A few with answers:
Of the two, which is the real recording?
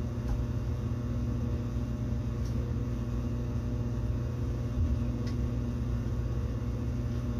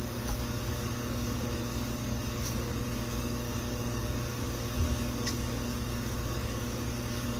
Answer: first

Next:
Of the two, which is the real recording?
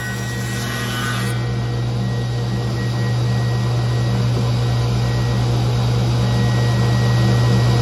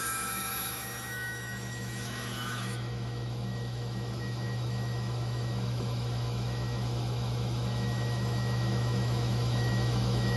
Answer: first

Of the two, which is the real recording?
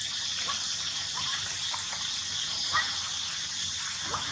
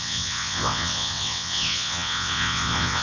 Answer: first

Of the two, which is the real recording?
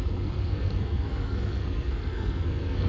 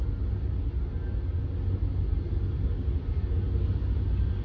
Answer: second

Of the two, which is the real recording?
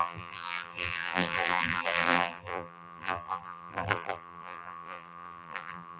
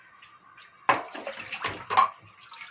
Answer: second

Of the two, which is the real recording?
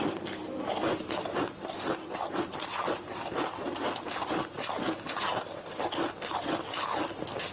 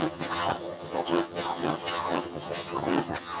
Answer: first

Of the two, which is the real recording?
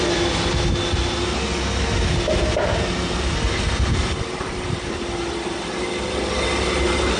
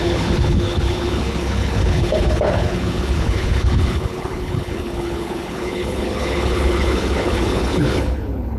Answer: first